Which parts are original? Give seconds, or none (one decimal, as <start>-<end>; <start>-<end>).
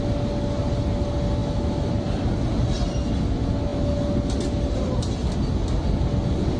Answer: 0.0-1.4; 1.9-6.6